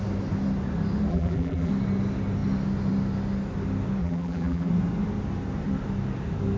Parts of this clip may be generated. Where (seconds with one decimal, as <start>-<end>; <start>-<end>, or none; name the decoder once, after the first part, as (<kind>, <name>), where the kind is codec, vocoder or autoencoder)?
1.1-1.7 (vocoder, BigVGAN v2); 4.0-4.7